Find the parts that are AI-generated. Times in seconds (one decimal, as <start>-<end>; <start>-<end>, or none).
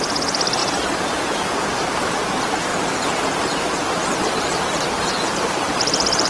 0.6-1.5; 2.7-6.3